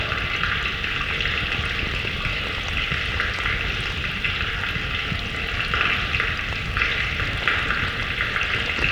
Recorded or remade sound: recorded